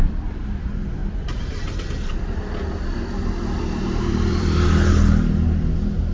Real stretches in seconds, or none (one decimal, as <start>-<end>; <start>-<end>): 0.0-1.0; 1.6-4.1; 4.9-6.1